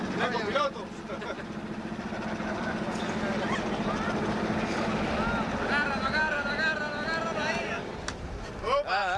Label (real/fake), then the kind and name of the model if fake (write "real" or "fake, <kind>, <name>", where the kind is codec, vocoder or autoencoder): real